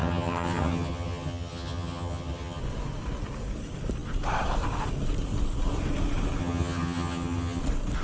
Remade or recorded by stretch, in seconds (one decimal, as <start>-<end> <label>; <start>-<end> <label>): 0.0-2.6 remade; 2.6-6.4 recorded; 6.4-7.6 remade; 7.6-8.0 recorded